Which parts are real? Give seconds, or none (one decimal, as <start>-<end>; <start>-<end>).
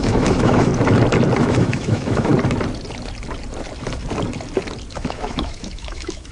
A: 0.7-1.4; 2.3-4.9